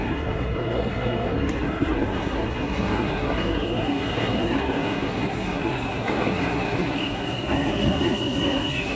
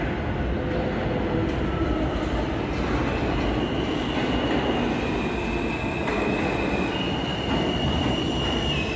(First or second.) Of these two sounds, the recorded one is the second